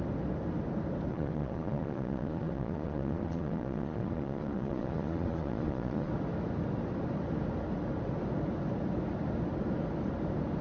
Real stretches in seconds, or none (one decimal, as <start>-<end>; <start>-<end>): 0.0-1.1; 6.1-10.6